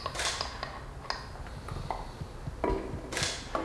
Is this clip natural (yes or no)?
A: yes